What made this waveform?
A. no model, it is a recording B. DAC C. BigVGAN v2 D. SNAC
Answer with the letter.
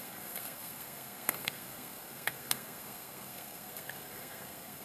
D